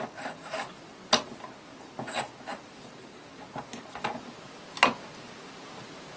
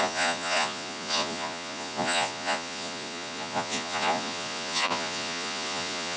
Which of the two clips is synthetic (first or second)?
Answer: second